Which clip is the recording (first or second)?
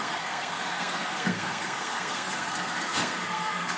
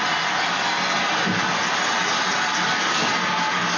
second